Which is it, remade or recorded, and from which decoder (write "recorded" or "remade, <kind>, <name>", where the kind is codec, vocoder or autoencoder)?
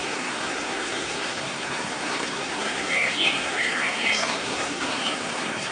remade, codec, SNAC